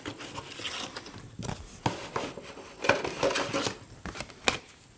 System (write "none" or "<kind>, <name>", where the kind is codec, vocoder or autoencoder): none